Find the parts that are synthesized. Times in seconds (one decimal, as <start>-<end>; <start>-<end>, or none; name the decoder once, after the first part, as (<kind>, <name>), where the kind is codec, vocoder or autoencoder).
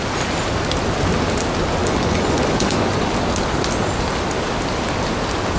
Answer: 1.8-3.1 (vocoder, Vocos)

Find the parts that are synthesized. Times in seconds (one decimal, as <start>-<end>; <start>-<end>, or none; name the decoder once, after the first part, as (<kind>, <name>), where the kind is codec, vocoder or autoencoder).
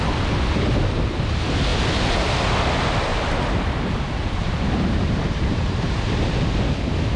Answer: 3.1-6.3 (vocoder, BigVGAN v2)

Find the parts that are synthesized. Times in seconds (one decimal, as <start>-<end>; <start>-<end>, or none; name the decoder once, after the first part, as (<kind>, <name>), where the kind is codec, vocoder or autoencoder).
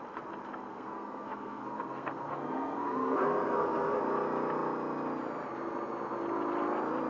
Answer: 0.7-4.0 (codec, SNAC)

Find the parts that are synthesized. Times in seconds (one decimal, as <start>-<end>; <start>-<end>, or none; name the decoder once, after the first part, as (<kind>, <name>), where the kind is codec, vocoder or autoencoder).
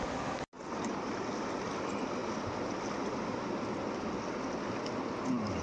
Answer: none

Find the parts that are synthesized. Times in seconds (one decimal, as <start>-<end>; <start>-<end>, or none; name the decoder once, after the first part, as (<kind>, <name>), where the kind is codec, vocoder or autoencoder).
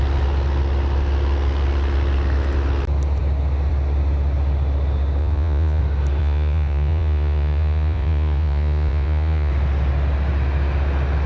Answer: 5.2-5.8 (vocoder, Vocos); 6.2-9.5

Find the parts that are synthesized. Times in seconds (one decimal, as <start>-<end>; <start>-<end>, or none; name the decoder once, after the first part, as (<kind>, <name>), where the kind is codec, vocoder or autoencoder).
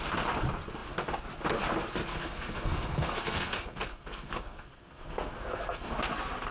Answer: 2.1-5.9 (codec, SNAC)